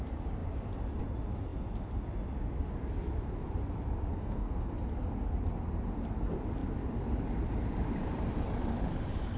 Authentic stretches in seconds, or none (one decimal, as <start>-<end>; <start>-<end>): 0.0-4.1; 4.6-9.4